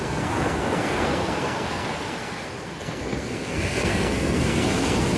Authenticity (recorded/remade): remade